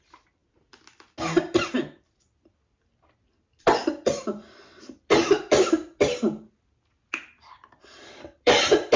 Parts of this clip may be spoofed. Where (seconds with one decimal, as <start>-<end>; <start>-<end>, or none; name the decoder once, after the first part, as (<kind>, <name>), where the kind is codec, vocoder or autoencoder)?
none